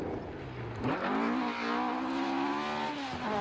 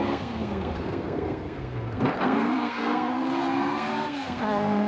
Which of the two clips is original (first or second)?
first